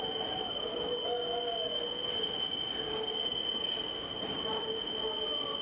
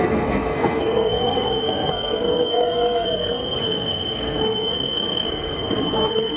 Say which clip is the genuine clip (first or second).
first